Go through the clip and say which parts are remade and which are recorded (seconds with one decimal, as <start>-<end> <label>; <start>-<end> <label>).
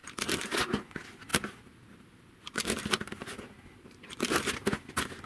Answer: 0.0-0.7 remade; 0.7-1.3 recorded; 1.3-4.5 remade; 4.5-5.3 recorded